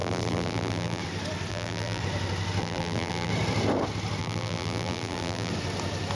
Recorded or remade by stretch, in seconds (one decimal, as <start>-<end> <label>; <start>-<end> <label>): 0.0-1.0 remade; 1.0-1.5 recorded; 1.5-2.0 remade; 2.0-2.6 recorded; 2.6-3.3 remade; 3.3-4.2 recorded; 4.2-5.5 remade; 5.5-6.1 recorded